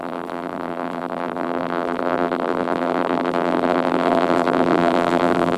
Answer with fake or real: fake